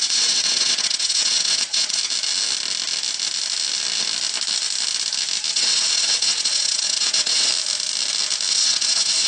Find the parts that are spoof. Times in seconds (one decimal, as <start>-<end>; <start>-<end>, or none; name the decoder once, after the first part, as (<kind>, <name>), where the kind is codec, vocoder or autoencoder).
0.0-2.0 (vocoder, WaveNeXt); 5.5-7.5; 8.5-9.3